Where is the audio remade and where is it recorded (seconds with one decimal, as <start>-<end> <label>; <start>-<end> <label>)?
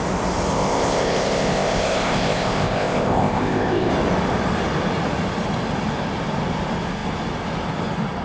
0.0-0.5 recorded; 0.5-3.9 remade; 3.9-8.2 recorded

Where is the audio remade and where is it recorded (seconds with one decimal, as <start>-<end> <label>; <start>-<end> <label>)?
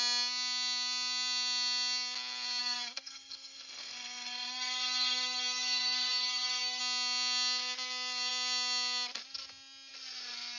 0.0-2.6 recorded; 2.6-6.8 remade; 6.8-10.6 recorded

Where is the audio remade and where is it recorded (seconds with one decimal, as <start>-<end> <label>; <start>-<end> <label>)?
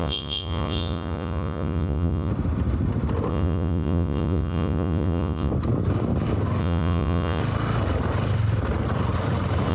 0.0-2.3 remade; 2.3-3.3 recorded; 3.3-5.5 remade; 5.5-6.6 recorded; 6.6-7.4 remade; 7.4-9.7 recorded